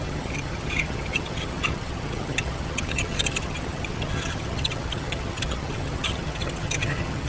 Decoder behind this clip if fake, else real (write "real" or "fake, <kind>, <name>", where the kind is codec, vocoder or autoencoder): fake, vocoder, HiFi-GAN